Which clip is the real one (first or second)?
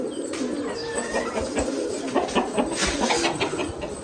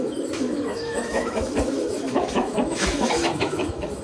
first